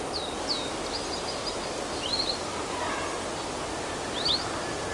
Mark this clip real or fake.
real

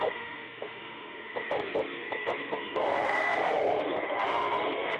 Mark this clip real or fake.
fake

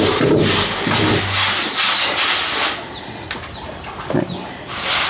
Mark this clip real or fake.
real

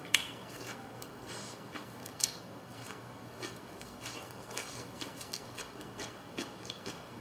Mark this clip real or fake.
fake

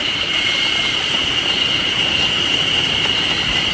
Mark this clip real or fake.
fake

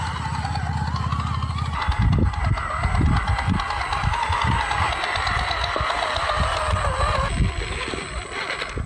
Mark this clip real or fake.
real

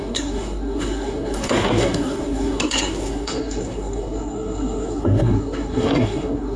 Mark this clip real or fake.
fake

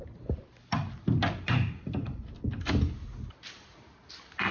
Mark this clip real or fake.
fake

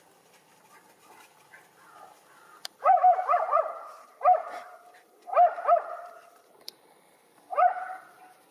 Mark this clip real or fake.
fake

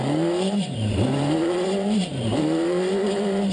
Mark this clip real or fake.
fake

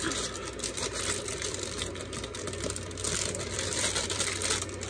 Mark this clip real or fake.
real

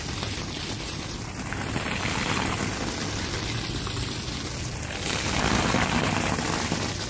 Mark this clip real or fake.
real